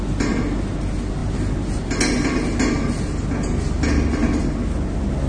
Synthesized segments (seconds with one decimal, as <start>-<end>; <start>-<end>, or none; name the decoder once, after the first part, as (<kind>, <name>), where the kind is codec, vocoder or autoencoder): none